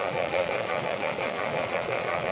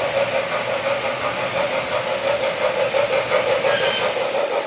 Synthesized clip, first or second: first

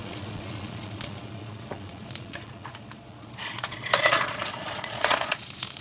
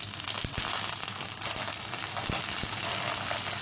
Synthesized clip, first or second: first